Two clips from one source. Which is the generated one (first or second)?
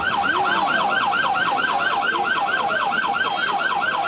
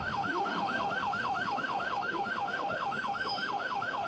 second